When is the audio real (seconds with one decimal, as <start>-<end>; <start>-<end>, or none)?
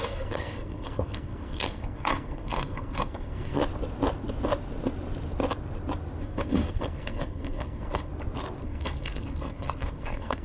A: 3.6-6.2; 8.1-8.6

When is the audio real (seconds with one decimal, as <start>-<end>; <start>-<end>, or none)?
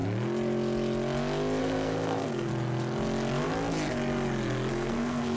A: 0.0-1.6; 2.5-4.7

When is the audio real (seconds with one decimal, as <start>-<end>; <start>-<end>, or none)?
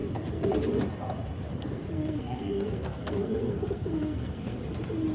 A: 0.5-1.5; 4.6-5.1